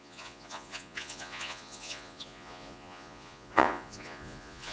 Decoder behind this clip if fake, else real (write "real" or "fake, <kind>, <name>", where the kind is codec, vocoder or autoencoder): fake, vocoder, Vocos